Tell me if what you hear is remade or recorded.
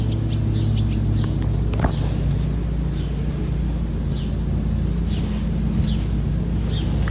recorded